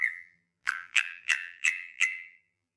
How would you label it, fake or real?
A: fake